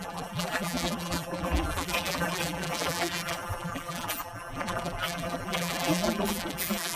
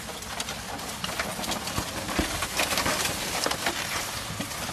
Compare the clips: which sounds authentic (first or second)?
second